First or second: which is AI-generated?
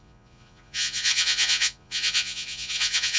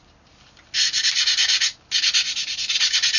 first